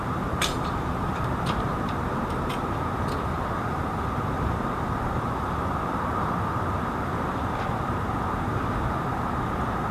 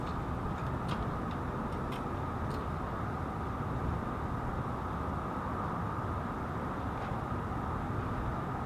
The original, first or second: second